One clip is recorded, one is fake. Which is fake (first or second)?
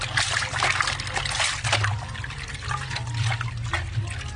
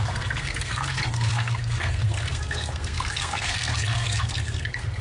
second